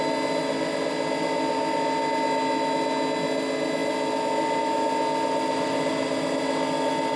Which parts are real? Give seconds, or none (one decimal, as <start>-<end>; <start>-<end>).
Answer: 0.0-7.2